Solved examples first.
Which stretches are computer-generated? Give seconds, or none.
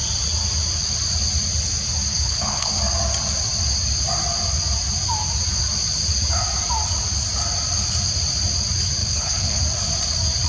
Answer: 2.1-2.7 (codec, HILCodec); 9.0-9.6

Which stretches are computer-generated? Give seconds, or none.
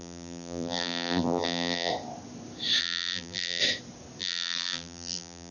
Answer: 0.0-1.9 (vocoder, BigVGAN v2); 2.8-3.6; 4.2-5.5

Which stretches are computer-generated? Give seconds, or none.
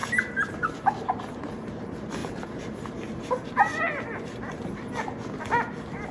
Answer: 0.0-1.5 (vocoder, BigVGAN v2); 2.2-3.2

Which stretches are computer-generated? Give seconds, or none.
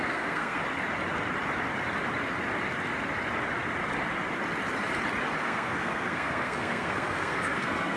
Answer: 0.0-0.6 (codec, SNAC); 5.4-8.0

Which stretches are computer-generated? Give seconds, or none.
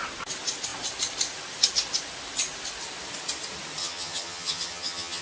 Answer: 3.8-5.2 (vocoder, HiFi-GAN)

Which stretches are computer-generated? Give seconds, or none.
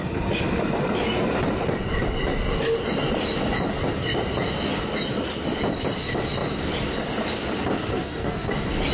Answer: 7.9-8.5 (codec, SNAC)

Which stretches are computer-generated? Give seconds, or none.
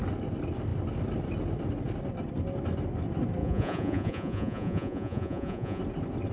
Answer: 3.4-5.8 (vocoder, Vocos)